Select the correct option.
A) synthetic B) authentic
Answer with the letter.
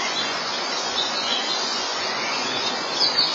A